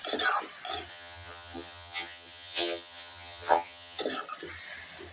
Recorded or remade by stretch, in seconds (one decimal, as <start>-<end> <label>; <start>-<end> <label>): 0.0-0.9 recorded; 0.9-4.0 remade; 4.0-5.1 recorded